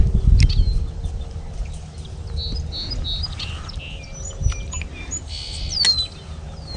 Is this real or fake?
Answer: real